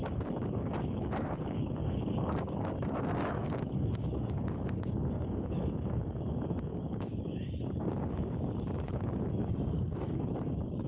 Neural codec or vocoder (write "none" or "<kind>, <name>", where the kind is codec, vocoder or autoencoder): codec, DAC